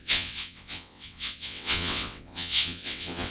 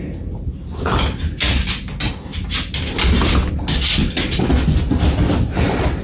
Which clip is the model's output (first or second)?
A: first